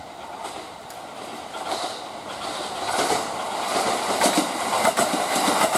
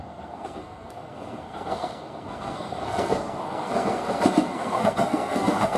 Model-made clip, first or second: second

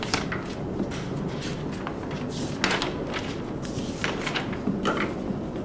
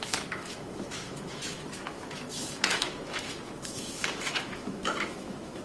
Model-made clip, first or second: second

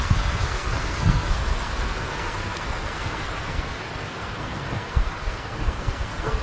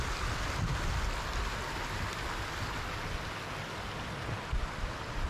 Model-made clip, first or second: first